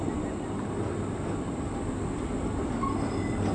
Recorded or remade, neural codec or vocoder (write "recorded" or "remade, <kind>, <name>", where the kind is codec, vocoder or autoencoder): recorded